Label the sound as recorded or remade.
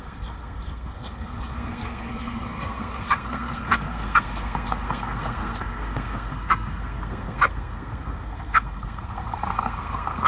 remade